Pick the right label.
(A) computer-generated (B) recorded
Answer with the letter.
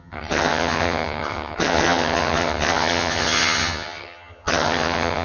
A